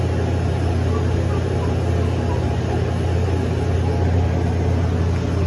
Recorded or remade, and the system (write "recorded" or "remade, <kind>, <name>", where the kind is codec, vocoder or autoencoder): recorded